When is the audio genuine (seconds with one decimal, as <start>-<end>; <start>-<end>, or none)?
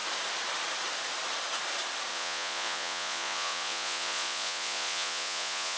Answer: 0.0-2.1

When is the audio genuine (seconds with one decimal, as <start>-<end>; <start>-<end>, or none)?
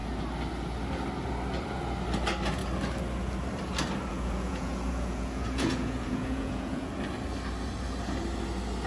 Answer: 0.0-4.1; 6.9-8.9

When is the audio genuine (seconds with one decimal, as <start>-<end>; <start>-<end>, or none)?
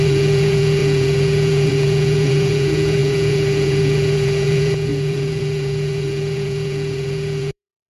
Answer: none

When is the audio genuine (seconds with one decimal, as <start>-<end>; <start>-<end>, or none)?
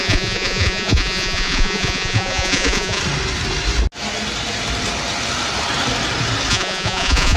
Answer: 3.0-6.5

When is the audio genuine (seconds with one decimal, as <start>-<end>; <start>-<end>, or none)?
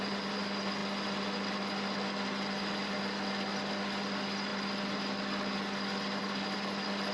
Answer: 0.0-7.1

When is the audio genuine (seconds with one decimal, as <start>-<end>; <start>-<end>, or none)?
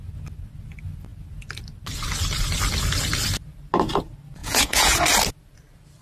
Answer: 0.0-4.4; 5.0-6.0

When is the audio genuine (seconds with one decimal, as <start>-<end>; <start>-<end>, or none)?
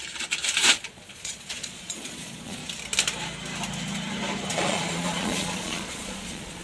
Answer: 0.0-0.6; 2.6-4.5